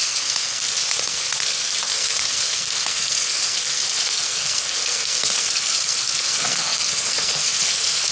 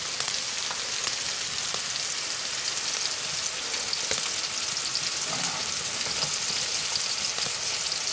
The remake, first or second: first